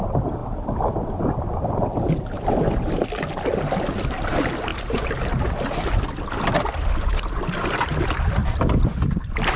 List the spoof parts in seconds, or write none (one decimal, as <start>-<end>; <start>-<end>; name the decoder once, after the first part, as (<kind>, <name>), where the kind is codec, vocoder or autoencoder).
none